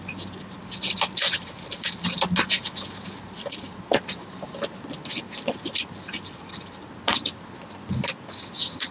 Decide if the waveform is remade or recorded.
recorded